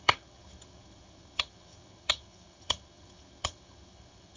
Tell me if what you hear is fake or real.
fake